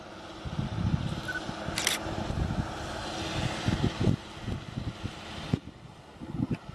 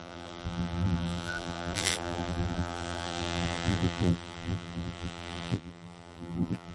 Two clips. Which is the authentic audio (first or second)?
first